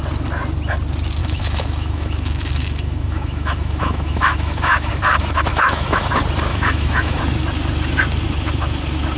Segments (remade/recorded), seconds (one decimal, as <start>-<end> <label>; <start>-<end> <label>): 0.0-1.2 recorded; 1.2-4.9 remade; 4.9-5.5 recorded; 5.5-6.1 remade; 6.1-6.5 recorded; 6.5-7.2 remade; 7.2-9.2 recorded